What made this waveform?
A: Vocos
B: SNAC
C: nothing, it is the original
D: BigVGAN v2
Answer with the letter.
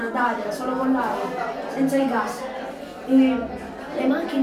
C